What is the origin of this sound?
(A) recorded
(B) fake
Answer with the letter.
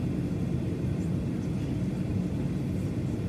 A